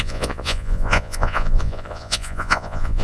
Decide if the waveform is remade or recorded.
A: remade